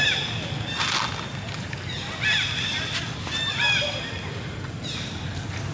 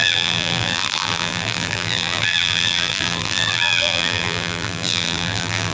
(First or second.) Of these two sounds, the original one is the first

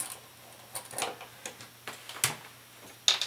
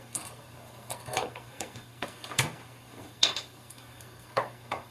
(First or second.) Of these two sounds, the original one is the first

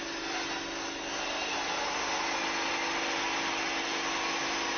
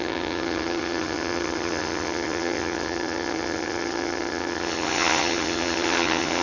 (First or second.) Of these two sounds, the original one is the first